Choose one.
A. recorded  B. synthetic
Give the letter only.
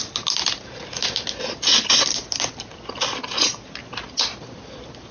A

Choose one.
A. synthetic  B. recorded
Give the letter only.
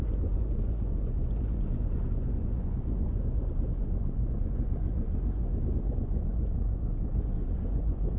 A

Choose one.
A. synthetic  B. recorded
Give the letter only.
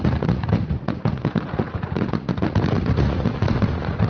A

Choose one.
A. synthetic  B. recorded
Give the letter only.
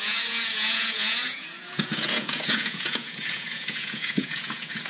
A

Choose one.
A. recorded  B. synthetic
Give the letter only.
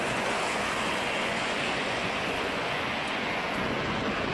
B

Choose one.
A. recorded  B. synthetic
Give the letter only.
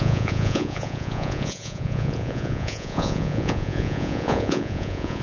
B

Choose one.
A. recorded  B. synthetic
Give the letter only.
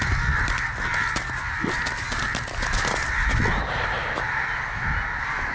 A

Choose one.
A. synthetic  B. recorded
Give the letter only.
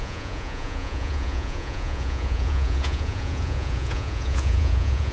A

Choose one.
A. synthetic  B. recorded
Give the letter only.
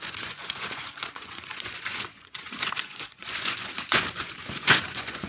A